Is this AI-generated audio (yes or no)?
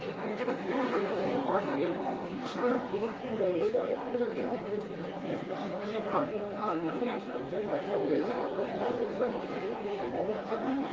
yes